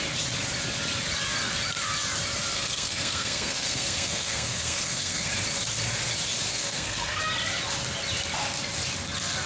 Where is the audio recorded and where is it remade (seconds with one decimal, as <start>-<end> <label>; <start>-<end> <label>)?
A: 0.0-2.5 recorded; 2.5-5.3 remade; 5.3-6.5 recorded; 6.5-7.2 remade; 7.2-9.5 recorded